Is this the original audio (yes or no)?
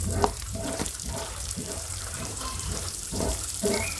no